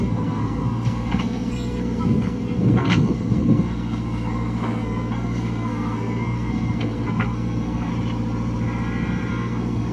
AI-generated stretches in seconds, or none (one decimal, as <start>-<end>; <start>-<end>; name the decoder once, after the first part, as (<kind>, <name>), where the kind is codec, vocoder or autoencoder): 0.0-7.9 (codec, SNAC); 9.3-9.9